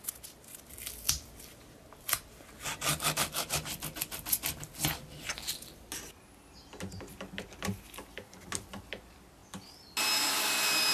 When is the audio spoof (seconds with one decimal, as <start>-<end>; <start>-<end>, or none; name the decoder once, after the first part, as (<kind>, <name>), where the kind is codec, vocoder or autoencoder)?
none